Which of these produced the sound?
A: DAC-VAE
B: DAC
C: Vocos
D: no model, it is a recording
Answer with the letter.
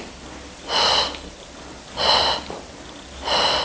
D